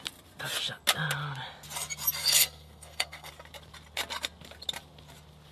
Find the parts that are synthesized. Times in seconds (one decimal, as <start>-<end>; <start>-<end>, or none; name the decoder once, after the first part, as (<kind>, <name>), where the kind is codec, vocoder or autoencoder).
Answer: 2.2-3.3 (codec, SNAC)